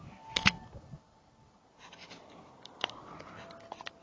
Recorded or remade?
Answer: recorded